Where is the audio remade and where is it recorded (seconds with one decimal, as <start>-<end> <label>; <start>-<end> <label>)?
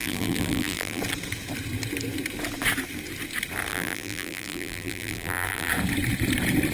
0.0-1.0 remade; 1.0-3.7 recorded; 3.7-5.7 remade; 5.7-6.7 recorded